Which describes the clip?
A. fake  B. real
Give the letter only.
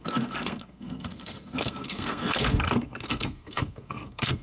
A